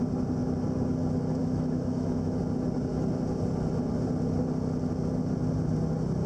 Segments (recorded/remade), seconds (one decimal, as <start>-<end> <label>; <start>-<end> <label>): 0.0-1.4 recorded; 1.4-2.4 remade; 2.4-6.3 recorded